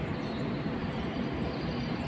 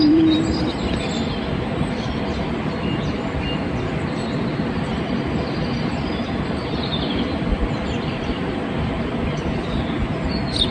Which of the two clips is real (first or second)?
first